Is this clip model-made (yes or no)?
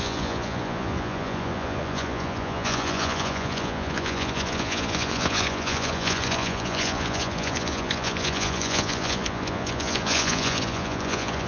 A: yes